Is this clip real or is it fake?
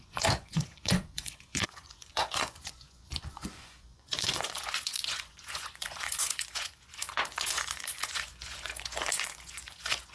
fake